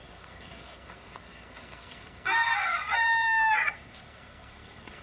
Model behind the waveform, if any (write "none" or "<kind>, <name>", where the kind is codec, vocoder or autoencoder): codec, SNAC